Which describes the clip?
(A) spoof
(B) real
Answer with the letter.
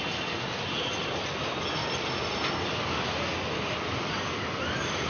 B